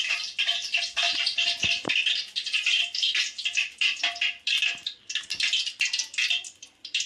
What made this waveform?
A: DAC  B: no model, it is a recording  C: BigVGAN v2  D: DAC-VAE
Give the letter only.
C